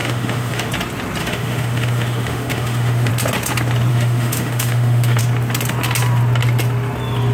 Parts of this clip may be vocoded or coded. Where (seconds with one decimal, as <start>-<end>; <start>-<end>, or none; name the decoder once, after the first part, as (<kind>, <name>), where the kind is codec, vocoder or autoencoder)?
0.0-0.7 (autoencoder, DAC-VAE); 1.2-3.1; 3.9-5.2